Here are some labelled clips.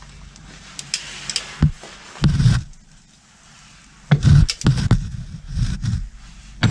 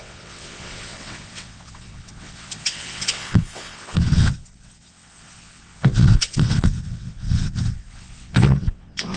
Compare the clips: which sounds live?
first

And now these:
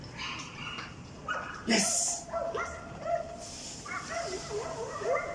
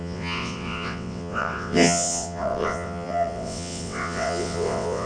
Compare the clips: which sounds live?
first